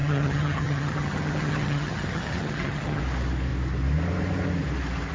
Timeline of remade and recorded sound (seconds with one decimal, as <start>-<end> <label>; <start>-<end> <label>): 0.0-3.0 remade; 3.0-5.1 recorded